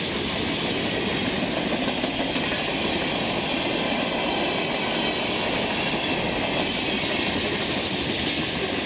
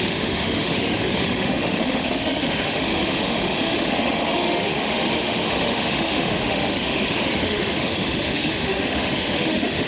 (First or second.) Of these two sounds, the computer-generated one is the second